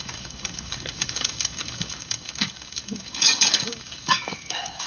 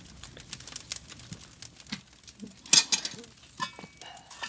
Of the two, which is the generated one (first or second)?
first